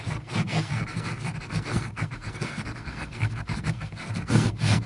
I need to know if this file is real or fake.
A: fake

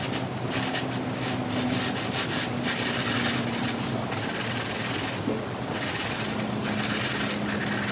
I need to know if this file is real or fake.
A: real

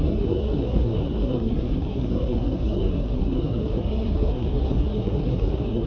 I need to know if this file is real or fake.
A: fake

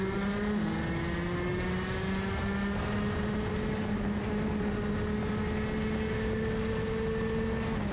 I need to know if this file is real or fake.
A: real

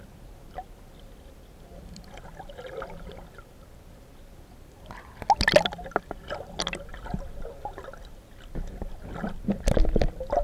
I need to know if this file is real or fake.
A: real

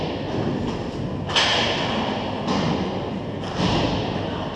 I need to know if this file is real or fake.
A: real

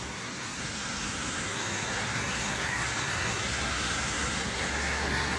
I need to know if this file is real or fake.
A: fake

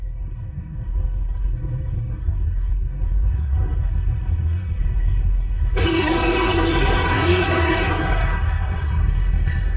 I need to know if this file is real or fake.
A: fake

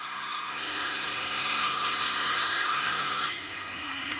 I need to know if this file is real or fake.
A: fake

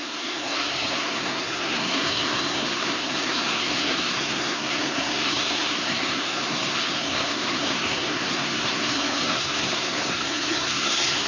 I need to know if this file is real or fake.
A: fake